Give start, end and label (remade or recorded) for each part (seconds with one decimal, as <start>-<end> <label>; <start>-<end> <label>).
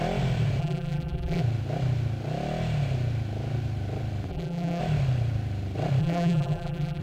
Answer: 0.0-0.6 recorded; 0.6-1.4 remade; 1.4-4.3 recorded; 4.3-4.8 remade; 4.8-6.0 recorded; 6.0-7.0 remade